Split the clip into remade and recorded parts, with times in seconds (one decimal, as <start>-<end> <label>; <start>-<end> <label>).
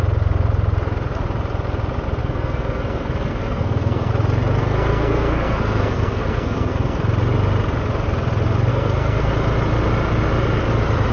0.0-2.2 recorded; 2.2-4.1 remade; 4.1-4.6 recorded; 4.6-7.0 remade; 7.0-8.7 recorded; 8.7-9.3 remade; 9.3-11.1 recorded